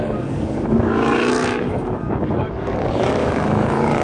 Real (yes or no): no